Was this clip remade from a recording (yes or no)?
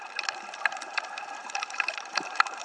yes